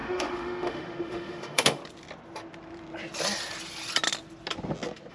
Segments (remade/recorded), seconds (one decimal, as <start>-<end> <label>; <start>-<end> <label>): 0.0-1.8 remade; 1.8-5.1 recorded